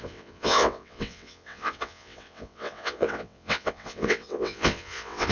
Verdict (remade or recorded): remade